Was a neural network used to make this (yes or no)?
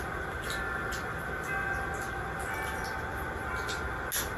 no